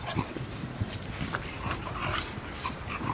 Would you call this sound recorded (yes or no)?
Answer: yes